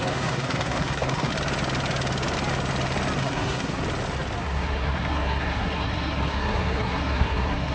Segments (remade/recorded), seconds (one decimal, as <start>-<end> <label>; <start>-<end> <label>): 0.0-1.3 remade; 1.3-3.2 recorded; 3.2-3.8 remade; 3.8-4.4 recorded; 4.4-7.7 remade